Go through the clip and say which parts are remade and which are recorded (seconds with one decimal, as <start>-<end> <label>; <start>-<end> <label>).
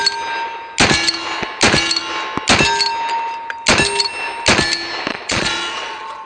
0.0-5.1 recorded; 5.1-6.3 remade